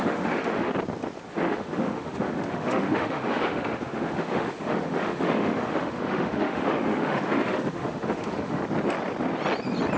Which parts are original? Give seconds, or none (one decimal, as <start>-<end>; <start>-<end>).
0.7-1.3; 8.6-10.0